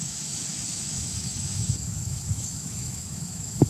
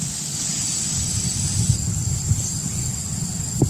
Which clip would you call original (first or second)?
second